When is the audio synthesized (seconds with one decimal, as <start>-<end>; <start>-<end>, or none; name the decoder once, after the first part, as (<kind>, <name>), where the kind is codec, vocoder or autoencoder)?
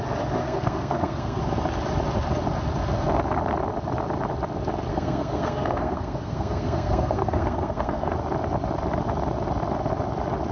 0.4-1.4 (codec, SNAC); 4.9-8.1